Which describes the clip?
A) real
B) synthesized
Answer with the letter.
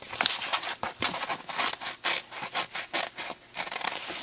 A